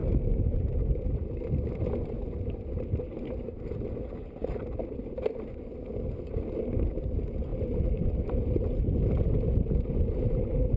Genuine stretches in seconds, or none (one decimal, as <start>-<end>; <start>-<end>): 0.0-10.8